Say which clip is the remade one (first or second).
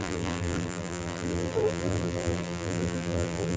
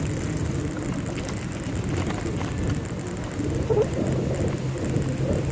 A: first